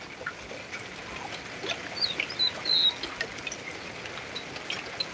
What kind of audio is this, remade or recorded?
recorded